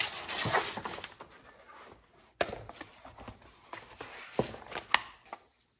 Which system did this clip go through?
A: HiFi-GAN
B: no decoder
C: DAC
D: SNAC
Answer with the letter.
B